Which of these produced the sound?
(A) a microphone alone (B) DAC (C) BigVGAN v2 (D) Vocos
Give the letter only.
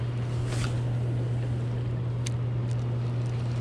A